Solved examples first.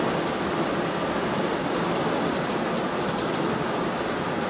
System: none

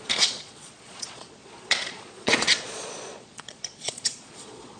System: vocoder, Vocos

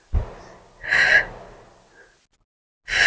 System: none